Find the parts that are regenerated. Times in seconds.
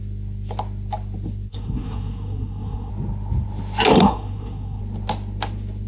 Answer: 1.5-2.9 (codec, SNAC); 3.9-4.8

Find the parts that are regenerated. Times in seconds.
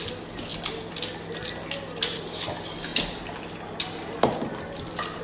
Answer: none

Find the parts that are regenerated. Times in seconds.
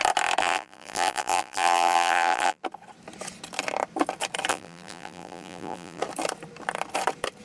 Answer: 0.4-2.6 (vocoder, BigVGAN v2); 4.5-6.0